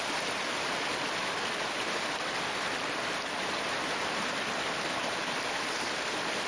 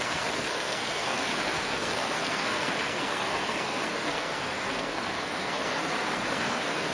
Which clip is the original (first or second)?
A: first